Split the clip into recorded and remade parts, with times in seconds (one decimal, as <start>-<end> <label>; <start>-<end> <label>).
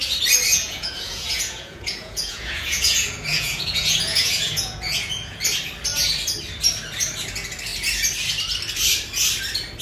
0.0-0.5 recorded; 0.5-5.4 remade; 5.4-9.8 recorded